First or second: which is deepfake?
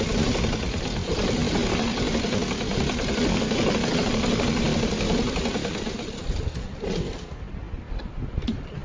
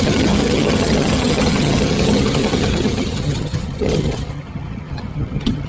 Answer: second